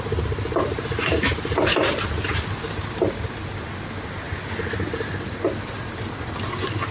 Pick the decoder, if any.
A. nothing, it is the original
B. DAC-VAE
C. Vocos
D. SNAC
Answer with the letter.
A